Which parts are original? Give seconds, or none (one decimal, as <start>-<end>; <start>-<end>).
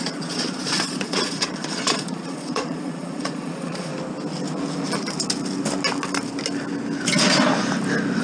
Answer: 3.9-8.2